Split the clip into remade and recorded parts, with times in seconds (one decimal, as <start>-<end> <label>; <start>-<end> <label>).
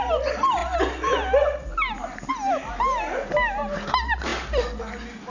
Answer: 0.0-5.3 recorded